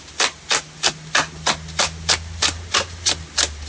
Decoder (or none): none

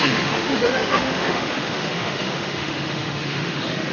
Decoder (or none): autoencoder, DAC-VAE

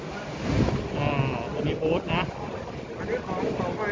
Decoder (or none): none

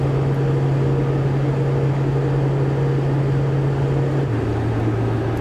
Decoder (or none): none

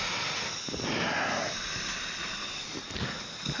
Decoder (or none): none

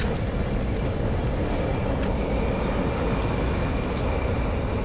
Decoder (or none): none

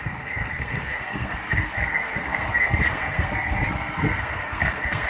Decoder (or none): codec, SNAC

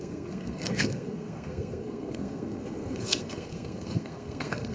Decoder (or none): codec, SNAC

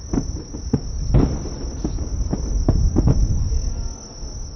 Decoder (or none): none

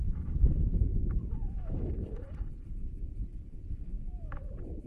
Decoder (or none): vocoder, BigVGAN v2